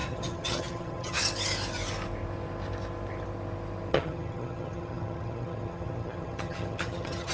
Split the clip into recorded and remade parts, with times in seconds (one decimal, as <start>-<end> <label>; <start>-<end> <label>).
0.0-1.2 remade; 1.2-3.9 recorded; 3.9-7.3 remade